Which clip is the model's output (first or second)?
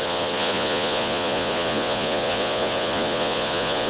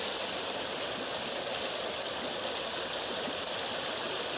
first